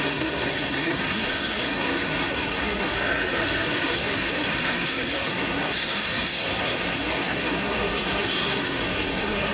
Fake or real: fake